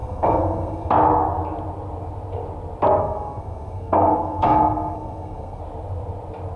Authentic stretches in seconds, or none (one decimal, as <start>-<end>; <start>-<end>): 0.9-3.0; 5.6-6.6